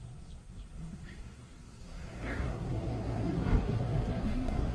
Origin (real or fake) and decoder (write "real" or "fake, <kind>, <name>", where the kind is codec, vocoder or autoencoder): fake, codec, SNAC